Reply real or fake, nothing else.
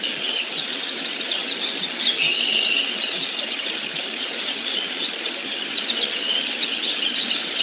fake